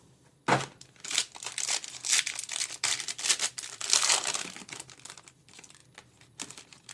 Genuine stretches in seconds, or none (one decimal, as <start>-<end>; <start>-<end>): 5.8-6.5